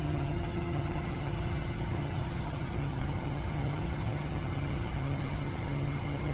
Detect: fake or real fake